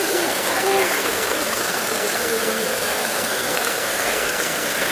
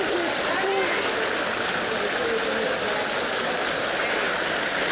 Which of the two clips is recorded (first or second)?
second